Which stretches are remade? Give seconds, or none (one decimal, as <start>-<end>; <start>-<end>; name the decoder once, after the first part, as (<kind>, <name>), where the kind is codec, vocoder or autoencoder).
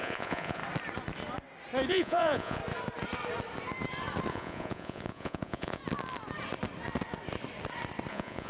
0.0-0.6 (vocoder, Vocos); 1.9-2.6; 4.3-5.8; 8.1-8.5